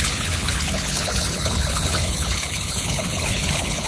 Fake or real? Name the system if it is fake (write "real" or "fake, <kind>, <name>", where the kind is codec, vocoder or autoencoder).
fake, codec, HILCodec